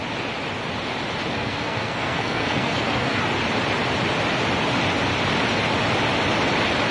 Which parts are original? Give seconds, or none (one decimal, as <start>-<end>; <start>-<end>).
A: 0.0-1.3; 3.2-6.9